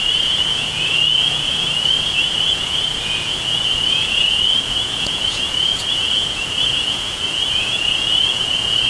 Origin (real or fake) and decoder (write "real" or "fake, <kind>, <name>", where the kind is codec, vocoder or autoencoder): fake, vocoder, Vocos